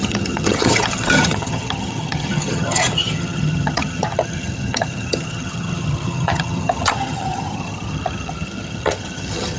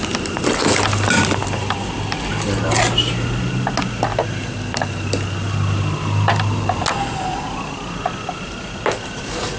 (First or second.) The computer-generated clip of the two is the first